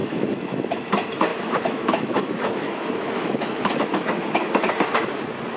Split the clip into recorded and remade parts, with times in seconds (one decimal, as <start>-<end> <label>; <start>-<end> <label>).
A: 0.0-0.9 remade; 0.9-1.3 recorded; 1.3-4.7 remade; 4.7-5.6 recorded